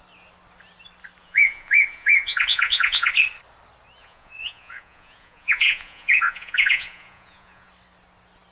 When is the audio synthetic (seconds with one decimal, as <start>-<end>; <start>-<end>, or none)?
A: 1.2-3.1; 4.0-7.7